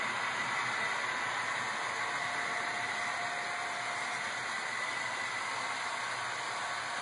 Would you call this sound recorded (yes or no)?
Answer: yes